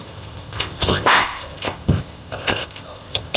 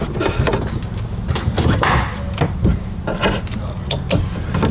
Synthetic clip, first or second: first